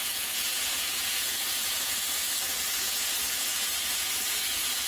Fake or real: fake